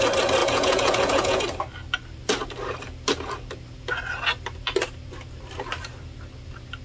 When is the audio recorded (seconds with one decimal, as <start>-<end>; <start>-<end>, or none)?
0.0-0.4; 1.4-6.8